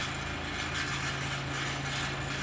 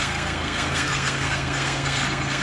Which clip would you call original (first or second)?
first